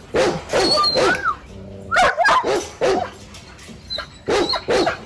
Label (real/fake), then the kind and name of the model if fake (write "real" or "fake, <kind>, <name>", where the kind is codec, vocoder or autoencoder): real